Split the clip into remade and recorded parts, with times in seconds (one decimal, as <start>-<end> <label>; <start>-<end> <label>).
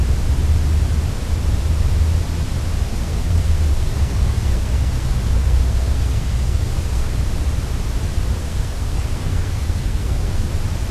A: 0.0-2.9 recorded; 2.9-7.1 remade; 7.1-8.4 recorded; 8.4-10.5 remade; 10.5-10.9 recorded